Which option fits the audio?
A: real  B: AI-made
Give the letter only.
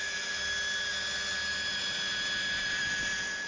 A